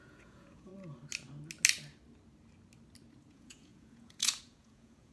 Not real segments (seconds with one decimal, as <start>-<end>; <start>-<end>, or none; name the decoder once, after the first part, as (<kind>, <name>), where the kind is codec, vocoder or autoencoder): 0.0-0.7 (vocoder, Vocos); 3.3-5.1